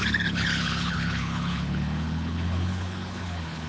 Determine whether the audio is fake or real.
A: fake